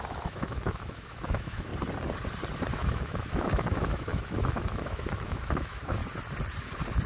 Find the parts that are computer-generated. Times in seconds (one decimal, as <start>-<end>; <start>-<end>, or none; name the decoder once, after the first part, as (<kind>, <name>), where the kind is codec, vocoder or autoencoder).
0.0-1.7 (autoencoder, DAC-VAE); 2.7-6.0